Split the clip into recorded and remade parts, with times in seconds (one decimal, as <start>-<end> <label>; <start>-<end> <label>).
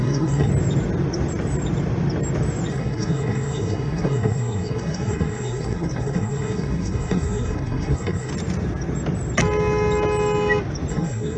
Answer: 0.0-0.5 remade; 0.5-2.7 recorded; 2.7-8.3 remade; 8.3-10.9 recorded; 10.9-11.4 remade